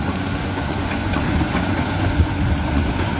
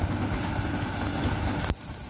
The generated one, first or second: first